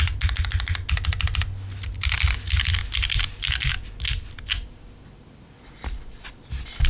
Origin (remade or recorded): recorded